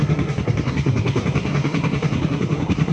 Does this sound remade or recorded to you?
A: remade